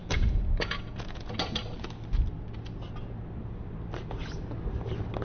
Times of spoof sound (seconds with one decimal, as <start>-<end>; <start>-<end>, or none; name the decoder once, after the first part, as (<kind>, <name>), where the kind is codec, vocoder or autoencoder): 0.0-1.3 (vocoder, Vocos)